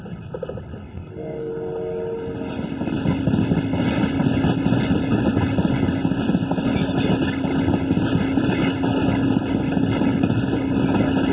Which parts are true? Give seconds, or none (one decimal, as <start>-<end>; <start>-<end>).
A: 0.0-0.8; 1.5-11.3